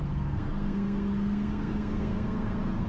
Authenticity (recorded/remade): remade